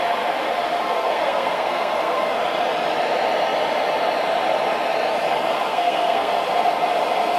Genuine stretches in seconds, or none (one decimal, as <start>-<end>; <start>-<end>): 0.0-0.8; 2.4-5.7; 6.3-7.4